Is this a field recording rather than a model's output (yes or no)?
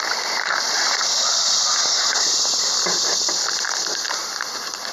no